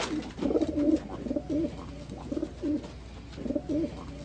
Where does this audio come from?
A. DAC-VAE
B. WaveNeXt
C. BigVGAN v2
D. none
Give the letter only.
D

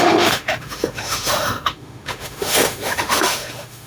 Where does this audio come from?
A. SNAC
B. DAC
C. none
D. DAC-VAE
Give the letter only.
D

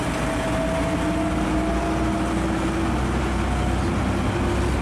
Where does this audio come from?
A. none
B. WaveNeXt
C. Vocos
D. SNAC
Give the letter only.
A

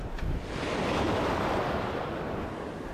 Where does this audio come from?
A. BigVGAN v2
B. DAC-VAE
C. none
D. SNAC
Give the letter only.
C